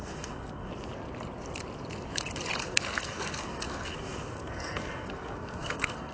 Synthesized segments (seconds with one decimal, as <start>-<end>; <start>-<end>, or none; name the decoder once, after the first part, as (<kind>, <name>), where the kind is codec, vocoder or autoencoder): 0.0-0.7 (codec, SNAC); 2.6-6.1